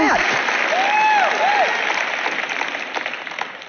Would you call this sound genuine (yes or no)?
yes